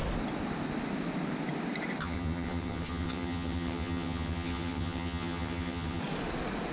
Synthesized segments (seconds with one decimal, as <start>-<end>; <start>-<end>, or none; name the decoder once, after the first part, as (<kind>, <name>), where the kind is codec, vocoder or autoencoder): 2.0-6.0 (vocoder, HiFi-GAN)